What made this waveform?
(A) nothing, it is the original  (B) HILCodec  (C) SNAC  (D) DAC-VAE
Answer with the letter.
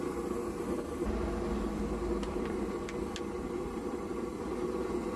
A